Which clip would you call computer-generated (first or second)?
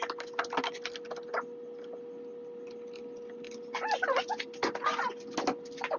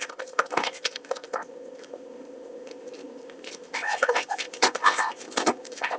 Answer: second